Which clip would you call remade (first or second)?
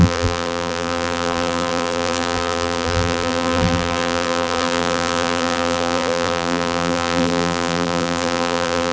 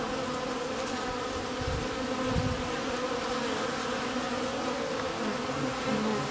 first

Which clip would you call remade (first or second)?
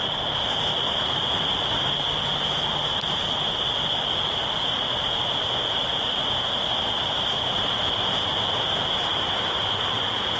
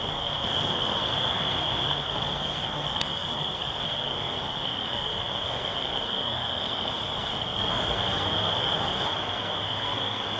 second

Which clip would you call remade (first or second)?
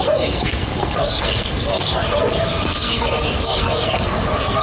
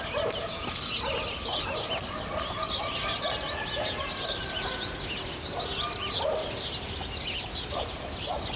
first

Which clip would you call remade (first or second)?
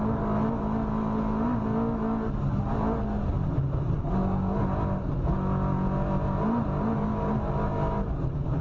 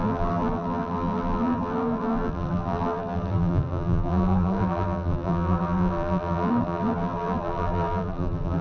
second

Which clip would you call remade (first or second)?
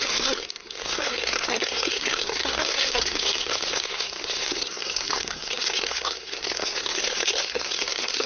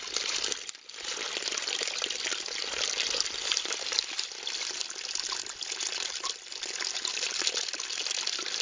first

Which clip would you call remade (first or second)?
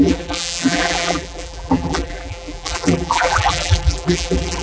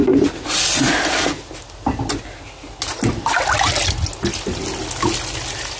first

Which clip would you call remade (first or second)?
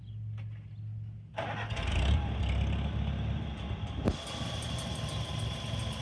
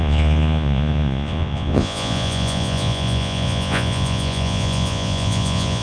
second